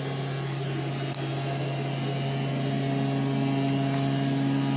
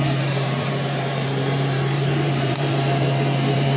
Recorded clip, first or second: first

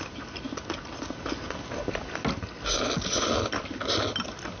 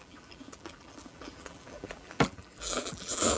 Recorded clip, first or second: first